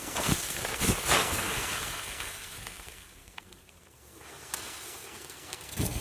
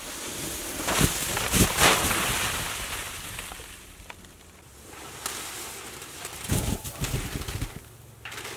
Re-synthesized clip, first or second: first